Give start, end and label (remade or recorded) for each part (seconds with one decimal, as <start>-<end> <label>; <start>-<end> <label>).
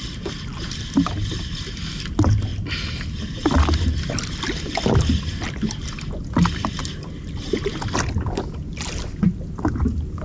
0.0-10.2 recorded